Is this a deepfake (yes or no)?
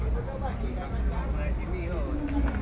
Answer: no